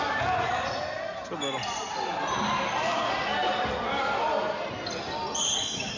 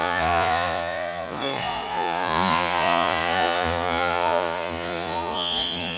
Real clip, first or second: first